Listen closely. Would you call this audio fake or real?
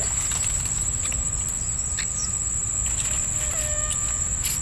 real